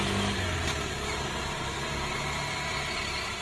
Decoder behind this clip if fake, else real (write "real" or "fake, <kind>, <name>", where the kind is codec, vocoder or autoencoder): real